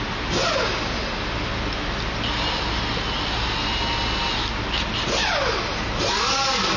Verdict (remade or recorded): recorded